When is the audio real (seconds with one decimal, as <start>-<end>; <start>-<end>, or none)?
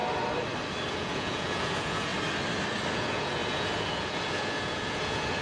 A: 0.0-0.9; 2.1-2.9